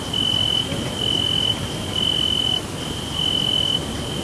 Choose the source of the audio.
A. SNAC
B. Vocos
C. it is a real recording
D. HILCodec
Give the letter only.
C